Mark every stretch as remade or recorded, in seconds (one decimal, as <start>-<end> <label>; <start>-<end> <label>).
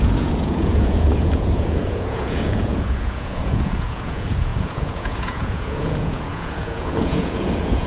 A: 0.0-7.9 remade